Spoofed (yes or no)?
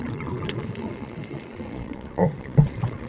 yes